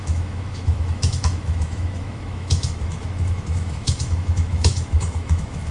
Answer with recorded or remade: remade